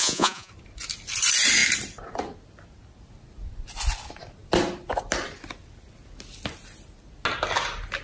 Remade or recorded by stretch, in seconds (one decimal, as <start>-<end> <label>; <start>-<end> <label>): 0.0-0.5 remade; 0.5-8.0 recorded